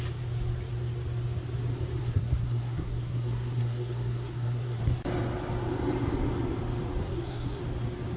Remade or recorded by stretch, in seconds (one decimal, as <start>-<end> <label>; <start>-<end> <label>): 0.0-2.0 recorded; 2.0-4.8 remade; 4.8-7.0 recorded; 7.0-7.6 remade; 7.6-8.2 recorded